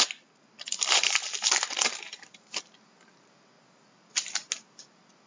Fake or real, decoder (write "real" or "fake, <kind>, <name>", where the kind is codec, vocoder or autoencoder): real